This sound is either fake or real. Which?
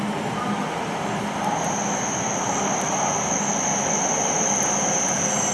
real